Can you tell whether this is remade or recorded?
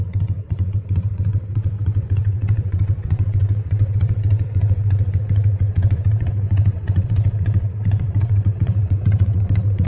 remade